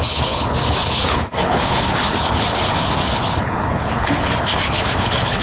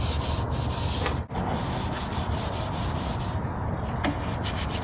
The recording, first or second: second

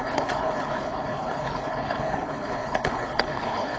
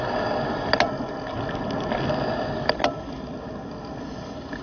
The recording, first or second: second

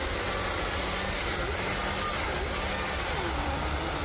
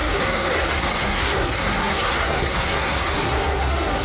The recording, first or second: first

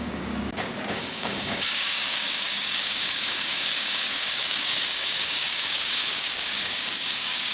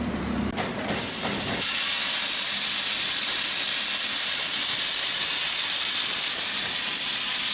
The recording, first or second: second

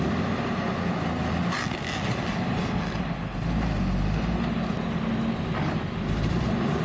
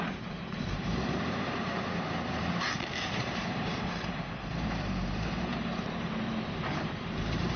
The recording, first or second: first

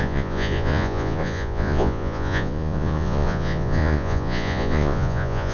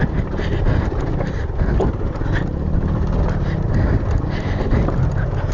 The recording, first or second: second